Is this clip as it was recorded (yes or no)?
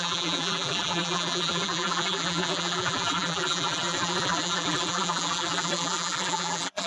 no